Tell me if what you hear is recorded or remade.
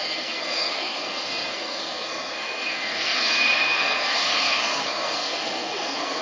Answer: remade